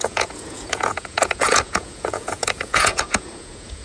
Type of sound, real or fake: fake